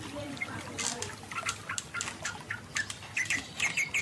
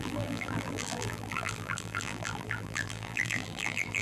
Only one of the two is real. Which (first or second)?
first